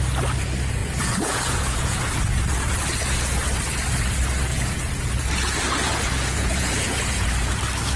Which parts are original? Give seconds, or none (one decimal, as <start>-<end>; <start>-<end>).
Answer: 0.0-0.8; 2.1-4.5; 5.1-5.8; 7.6-8.0